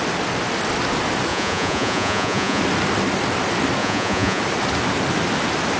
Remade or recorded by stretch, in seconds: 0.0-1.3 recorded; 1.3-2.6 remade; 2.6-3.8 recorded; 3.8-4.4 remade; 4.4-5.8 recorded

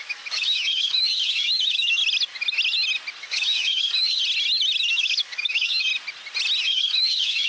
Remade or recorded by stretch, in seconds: 0.0-2.0 remade; 2.0-3.2 recorded; 3.2-4.2 remade; 4.2-4.9 recorded; 4.9-5.9 remade; 5.9-6.6 recorded; 6.6-7.5 remade

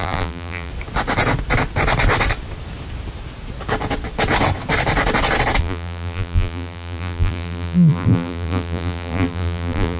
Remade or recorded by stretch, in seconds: 0.0-0.7 remade; 0.7-5.6 recorded; 5.6-10.0 remade

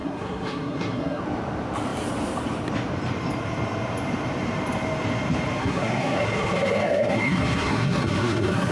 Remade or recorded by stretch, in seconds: 0.0-1.2 remade; 1.2-5.6 recorded; 5.6-8.7 remade